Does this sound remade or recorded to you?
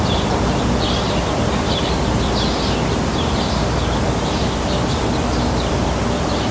recorded